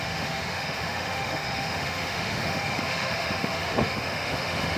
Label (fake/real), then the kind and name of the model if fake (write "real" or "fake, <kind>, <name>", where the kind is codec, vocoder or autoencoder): fake, autoencoder, DAC-VAE